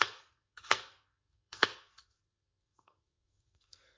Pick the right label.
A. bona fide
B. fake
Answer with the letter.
B